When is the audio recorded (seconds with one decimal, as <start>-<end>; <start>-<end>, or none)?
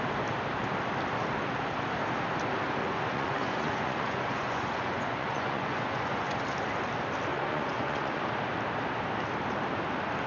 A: 0.0-2.8; 6.4-7.3; 8.2-10.3